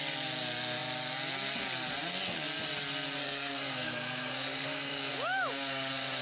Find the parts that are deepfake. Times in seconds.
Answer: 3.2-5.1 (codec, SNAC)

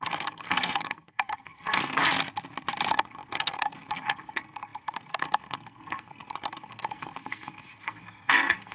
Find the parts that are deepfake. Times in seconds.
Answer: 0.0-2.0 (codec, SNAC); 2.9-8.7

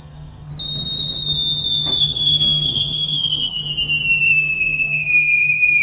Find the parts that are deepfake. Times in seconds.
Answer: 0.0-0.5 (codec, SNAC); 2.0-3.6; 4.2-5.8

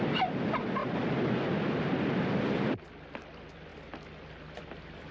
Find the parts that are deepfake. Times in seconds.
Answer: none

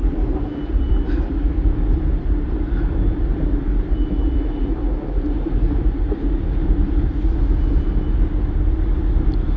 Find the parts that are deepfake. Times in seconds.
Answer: none

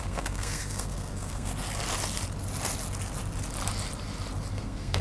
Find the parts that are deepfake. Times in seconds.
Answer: 0.0-1.5 (codec, SNAC); 4.5-5.0

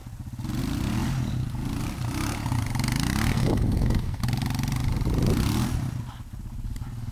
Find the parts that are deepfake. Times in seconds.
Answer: 3.3-4.2 (codec, SNAC)